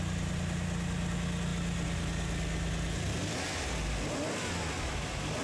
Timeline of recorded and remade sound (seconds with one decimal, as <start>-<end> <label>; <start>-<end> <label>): 0.0-5.4 recorded